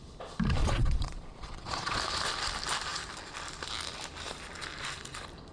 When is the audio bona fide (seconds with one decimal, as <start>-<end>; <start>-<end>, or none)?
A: 0.0-0.6; 2.0-5.5